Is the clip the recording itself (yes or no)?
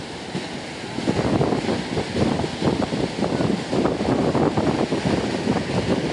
yes